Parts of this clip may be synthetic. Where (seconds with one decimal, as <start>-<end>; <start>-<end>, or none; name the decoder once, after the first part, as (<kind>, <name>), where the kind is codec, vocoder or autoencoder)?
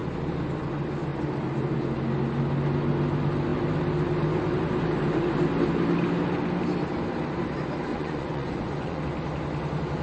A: 7.9-9.0 (vocoder, Vocos)